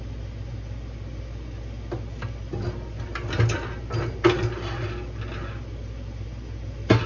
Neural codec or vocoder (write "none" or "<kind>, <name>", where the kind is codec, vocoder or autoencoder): none